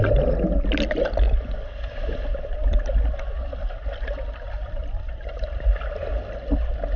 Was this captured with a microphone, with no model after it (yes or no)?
yes